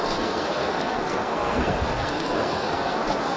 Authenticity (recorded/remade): remade